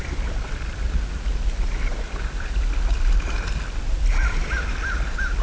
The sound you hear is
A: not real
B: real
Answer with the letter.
B